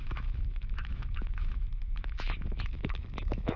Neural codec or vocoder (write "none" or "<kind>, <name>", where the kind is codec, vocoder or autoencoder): autoencoder, DAC-VAE